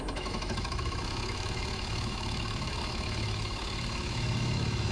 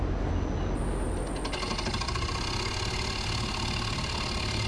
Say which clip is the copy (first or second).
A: first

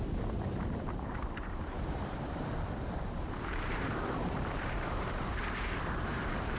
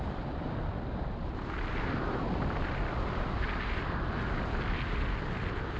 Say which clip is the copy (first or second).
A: first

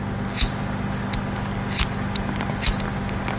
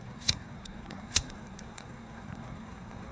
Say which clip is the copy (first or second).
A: second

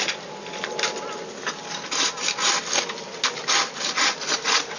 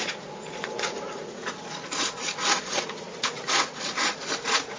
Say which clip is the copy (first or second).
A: second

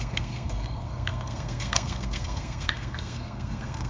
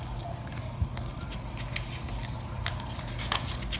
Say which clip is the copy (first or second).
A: first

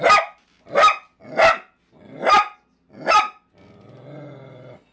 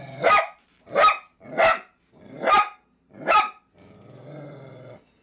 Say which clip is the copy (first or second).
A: second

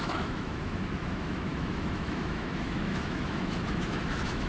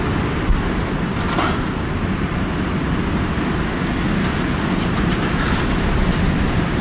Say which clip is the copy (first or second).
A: first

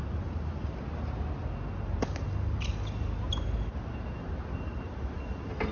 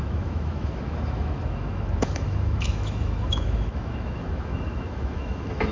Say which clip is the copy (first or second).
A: second